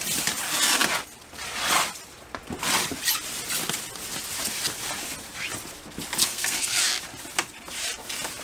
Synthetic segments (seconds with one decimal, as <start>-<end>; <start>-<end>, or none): 6.2-6.8